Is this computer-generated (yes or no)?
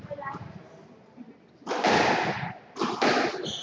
no